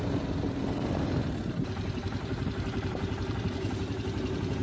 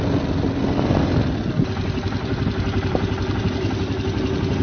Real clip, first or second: second